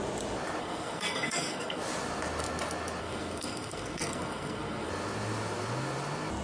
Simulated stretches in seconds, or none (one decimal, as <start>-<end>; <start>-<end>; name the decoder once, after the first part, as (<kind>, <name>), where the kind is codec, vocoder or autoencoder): 0.6-1.8 (codec, SNAC); 3.0-4.9